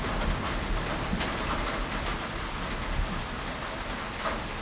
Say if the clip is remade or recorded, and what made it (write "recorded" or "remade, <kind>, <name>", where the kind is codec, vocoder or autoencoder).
recorded